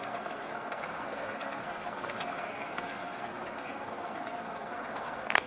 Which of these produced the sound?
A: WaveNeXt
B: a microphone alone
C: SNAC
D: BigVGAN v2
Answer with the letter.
C